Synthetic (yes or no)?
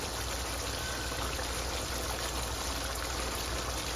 no